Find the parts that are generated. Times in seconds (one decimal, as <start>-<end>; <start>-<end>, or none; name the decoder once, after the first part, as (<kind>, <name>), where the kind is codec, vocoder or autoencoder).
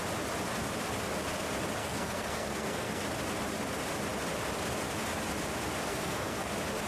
1.8-3.0 (codec, SNAC); 5.9-6.5